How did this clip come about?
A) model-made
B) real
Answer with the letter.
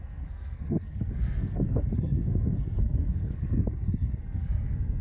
A